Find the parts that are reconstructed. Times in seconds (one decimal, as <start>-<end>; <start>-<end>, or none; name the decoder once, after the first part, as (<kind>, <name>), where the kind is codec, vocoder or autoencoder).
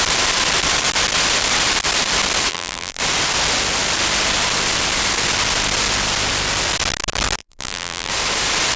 2.5-3.0 (vocoder, BigVGAN v2); 7.4-8.1